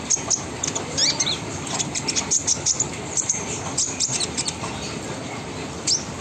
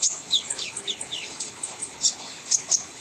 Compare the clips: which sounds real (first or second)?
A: first